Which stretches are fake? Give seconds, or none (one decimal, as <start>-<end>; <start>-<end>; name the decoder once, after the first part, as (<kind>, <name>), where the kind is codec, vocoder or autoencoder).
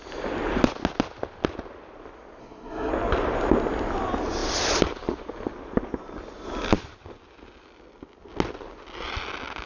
2.4-2.9 (codec, SNAC)